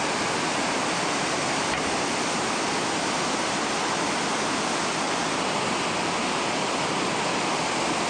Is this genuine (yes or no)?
yes